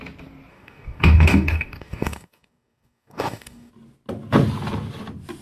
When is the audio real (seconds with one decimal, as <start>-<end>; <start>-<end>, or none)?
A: 0.0-0.5; 3.7-5.4